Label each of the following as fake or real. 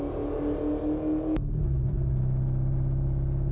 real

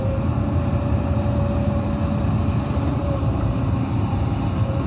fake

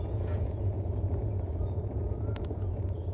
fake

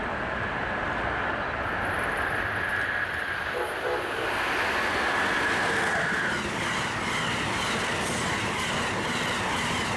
real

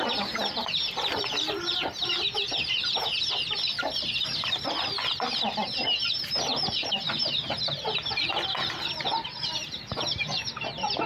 real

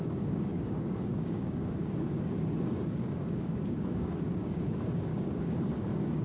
fake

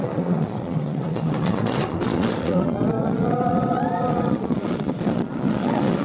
fake